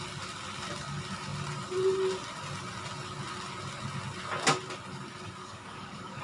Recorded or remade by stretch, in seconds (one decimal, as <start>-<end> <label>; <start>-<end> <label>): 0.0-5.4 recorded; 5.4-6.2 remade